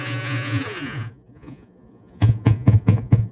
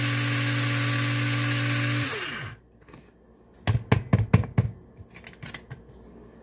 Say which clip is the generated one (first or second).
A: first